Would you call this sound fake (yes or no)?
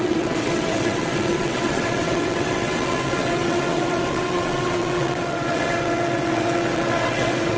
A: yes